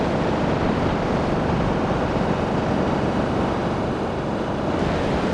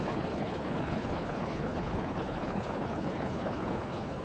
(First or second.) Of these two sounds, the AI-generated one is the second